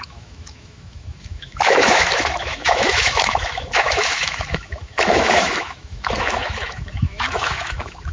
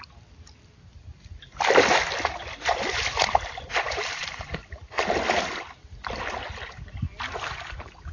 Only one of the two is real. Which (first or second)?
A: second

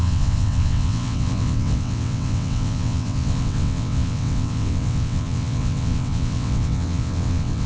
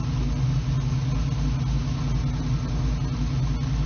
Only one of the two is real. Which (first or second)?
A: second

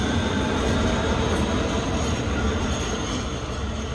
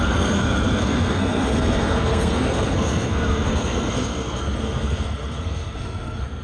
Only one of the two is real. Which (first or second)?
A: first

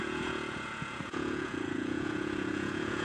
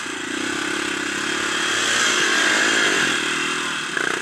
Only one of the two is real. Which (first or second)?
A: second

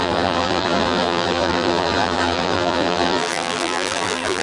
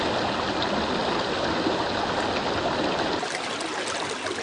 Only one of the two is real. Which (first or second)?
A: second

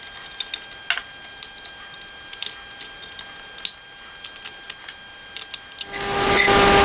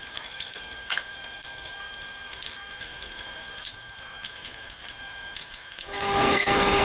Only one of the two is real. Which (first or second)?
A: first